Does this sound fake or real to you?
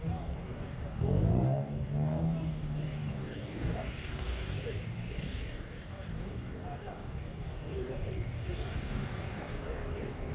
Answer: fake